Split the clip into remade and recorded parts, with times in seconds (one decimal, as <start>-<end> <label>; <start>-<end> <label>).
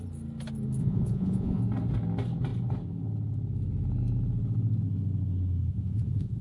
0.0-0.8 recorded; 0.8-1.6 remade; 1.6-5.7 recorded; 5.7-6.4 remade